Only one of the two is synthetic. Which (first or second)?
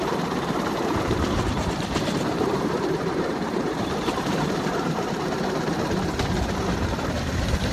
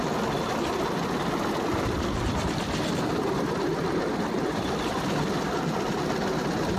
first